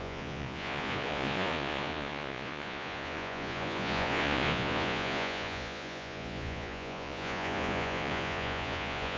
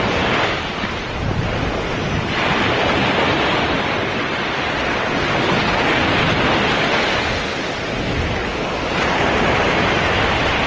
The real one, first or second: second